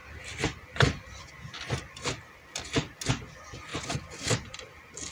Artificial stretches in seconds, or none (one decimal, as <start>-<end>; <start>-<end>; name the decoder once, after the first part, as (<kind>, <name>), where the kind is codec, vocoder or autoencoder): none